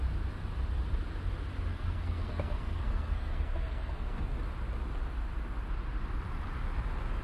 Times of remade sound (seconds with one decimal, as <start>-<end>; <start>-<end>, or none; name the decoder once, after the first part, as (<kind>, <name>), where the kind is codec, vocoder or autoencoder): 1.7-4.4 (codec, SNAC)